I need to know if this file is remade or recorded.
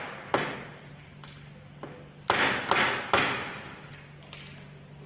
recorded